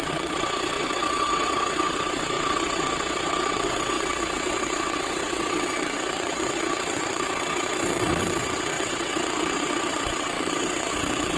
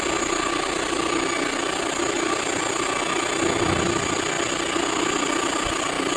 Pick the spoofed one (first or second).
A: first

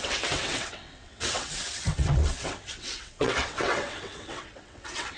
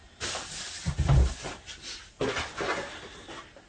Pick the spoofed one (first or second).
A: first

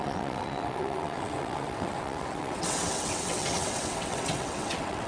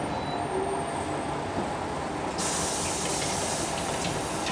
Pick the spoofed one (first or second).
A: first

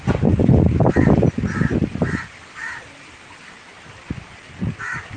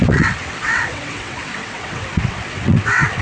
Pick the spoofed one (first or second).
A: second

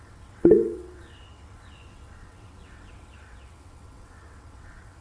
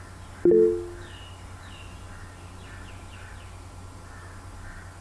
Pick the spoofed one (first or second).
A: first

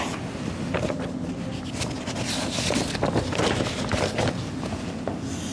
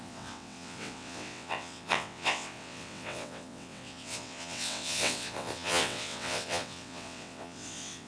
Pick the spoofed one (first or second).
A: second